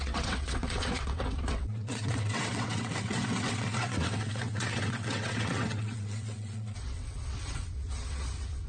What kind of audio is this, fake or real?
fake